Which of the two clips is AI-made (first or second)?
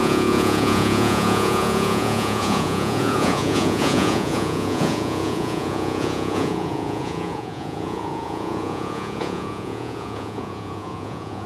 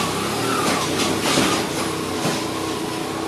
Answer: first